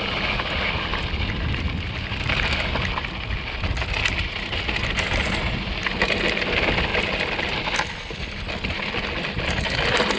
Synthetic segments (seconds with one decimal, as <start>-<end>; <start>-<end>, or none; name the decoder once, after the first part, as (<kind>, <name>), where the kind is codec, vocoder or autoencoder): none

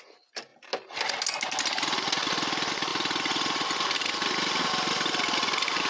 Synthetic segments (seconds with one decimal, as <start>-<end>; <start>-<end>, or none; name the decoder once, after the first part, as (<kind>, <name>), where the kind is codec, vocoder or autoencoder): none

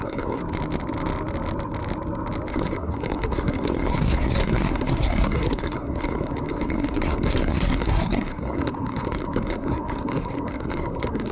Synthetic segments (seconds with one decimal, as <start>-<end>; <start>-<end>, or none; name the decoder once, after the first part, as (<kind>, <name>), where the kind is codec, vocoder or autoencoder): 0.0-0.4 (codec, SNAC); 2.5-11.3

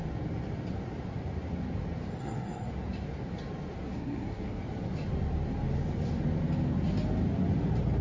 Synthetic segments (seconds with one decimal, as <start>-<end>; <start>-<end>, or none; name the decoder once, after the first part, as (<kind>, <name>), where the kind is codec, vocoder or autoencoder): 2.2-2.7 (codec, SNAC); 3.8-4.6

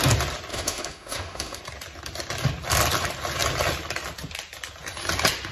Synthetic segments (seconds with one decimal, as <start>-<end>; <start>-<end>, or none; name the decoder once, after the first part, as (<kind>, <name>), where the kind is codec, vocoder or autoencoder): 0.5-1.6 (autoencoder, DAC-VAE)

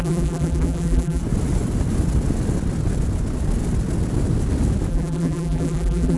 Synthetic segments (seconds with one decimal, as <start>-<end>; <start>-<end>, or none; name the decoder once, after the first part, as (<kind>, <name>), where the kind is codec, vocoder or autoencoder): 0.0-1.2 (vocoder, BigVGAN v2); 4.9-6.2

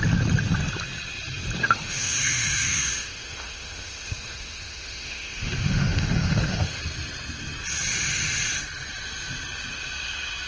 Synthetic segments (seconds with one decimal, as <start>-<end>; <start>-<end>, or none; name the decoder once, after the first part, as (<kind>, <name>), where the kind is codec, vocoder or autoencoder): 1.6-6.8 (autoencoder, DAC-VAE)

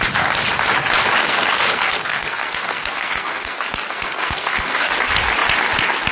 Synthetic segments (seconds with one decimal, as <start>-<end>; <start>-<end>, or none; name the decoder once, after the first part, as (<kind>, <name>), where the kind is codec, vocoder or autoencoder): 1.2-4.9 (codec, SNAC)